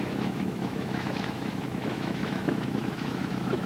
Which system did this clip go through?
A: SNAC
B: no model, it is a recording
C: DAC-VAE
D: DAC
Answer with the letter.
C